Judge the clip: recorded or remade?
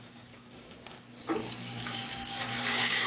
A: remade